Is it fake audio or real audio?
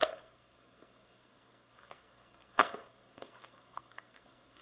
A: fake